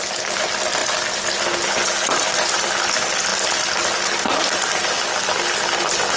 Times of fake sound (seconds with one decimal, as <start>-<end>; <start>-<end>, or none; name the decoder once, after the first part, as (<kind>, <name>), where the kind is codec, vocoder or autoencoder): 0.0-0.8 (vocoder, BigVGAN v2); 2.9-3.3; 4.9-6.2